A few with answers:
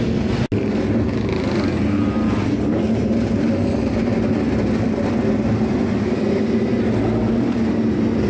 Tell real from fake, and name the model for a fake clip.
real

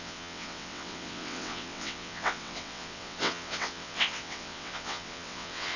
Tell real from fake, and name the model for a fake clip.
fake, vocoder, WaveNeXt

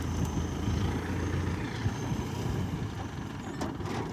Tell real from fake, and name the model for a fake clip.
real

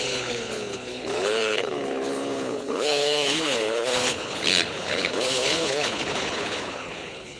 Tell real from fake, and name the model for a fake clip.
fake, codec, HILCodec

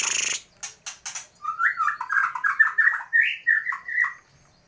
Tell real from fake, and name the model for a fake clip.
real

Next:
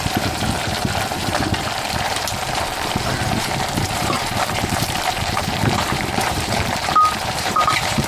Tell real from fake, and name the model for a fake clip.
fake, vocoder, BigVGAN v2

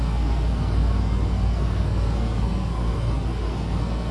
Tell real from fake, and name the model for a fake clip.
fake, codec, SNAC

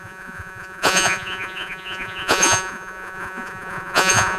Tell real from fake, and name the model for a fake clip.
fake, vocoder, Vocos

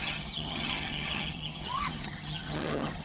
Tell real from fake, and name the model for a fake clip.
fake, vocoder, HiFi-GAN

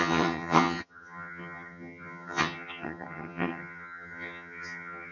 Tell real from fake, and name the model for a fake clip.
fake, vocoder, HiFi-GAN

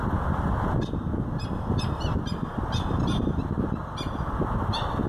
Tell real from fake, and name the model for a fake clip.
real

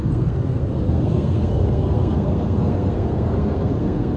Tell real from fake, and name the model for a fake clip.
fake, codec, SNAC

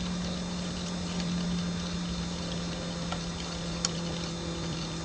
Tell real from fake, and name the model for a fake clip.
real